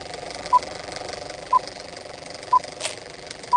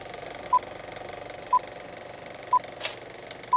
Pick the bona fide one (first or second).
second